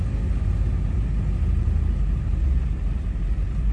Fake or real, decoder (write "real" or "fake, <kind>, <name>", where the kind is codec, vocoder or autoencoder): real